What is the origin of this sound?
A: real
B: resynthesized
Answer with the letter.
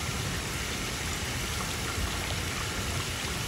A